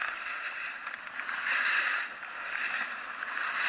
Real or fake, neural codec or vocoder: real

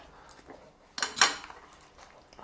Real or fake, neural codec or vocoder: real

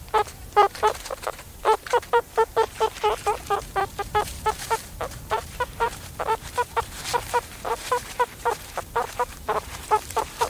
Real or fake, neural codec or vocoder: fake, vocoder, BigVGAN v2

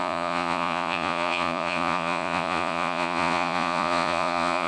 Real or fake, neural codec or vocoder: fake, vocoder, Vocos